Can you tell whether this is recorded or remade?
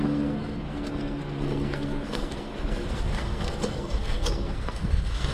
remade